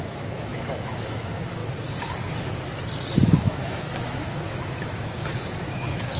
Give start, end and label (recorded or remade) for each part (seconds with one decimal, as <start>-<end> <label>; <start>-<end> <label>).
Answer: 0.0-1.6 remade; 1.6-3.2 recorded; 3.2-6.2 remade